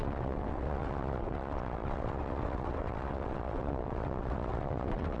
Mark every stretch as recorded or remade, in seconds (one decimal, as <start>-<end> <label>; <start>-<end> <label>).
0.0-5.2 remade